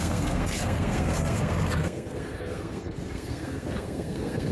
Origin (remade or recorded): remade